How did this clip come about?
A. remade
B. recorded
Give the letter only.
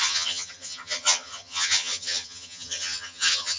A